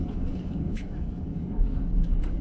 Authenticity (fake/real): fake